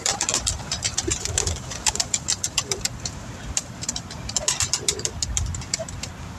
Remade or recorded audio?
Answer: recorded